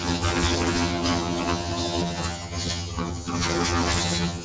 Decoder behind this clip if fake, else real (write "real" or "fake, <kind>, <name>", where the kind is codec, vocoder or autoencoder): fake, vocoder, HiFi-GAN